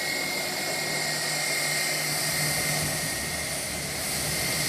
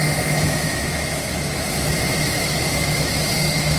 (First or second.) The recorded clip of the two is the first